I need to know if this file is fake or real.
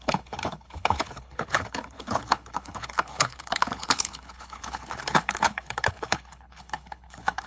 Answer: fake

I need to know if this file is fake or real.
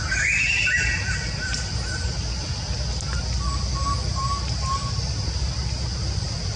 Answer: real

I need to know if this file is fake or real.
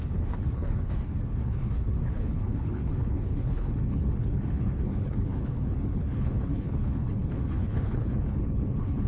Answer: fake